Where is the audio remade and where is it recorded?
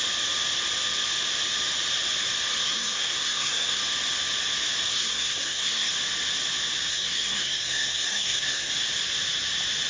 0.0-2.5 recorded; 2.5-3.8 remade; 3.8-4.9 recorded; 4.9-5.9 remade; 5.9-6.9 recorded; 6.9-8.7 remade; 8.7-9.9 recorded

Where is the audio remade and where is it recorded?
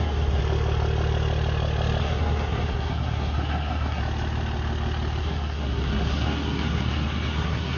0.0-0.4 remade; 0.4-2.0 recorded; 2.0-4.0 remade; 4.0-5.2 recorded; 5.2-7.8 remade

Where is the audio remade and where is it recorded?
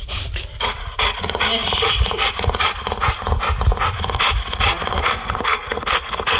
0.0-5.0 recorded; 5.0-6.4 remade